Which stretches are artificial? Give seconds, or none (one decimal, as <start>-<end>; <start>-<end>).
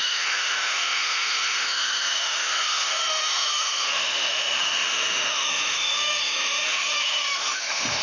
0.0-8.0